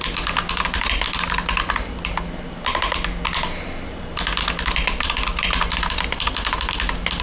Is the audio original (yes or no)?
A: yes